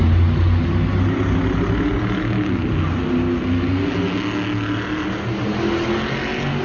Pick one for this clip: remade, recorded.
recorded